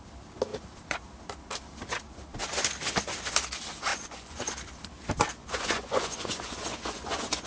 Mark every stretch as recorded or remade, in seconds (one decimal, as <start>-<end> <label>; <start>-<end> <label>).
0.0-3.9 recorded; 3.9-4.5 remade; 4.5-5.4 recorded; 5.4-7.5 remade